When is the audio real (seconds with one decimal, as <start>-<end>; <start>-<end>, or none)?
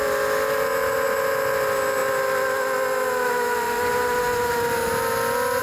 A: 0.0-5.6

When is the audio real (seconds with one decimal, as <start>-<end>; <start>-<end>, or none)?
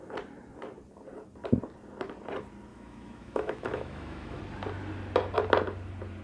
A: 0.0-2.7; 4.4-6.2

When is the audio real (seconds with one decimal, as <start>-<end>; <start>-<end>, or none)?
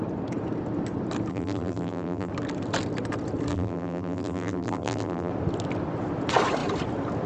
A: 0.0-1.3; 2.3-3.5; 5.3-7.3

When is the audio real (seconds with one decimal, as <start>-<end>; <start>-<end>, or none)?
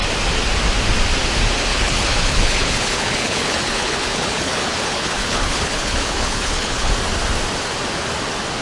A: 0.0-1.7; 6.9-8.6